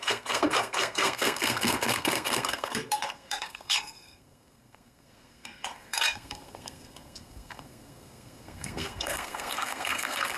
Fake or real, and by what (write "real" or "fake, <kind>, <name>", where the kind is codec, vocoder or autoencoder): fake, codec, SNAC